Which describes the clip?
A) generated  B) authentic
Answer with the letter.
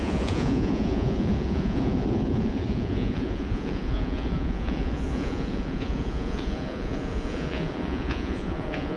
A